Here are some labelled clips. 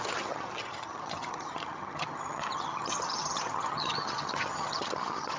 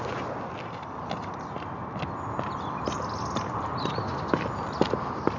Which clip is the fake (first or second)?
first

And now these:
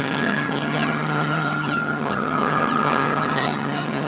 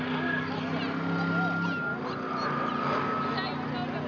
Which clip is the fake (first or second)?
first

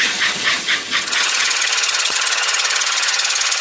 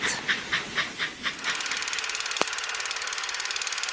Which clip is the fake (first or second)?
first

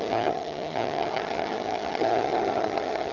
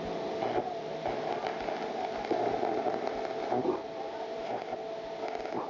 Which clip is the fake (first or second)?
first